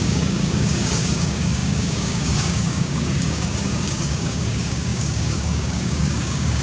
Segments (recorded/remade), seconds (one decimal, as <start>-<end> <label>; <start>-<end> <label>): 0.0-6.6 remade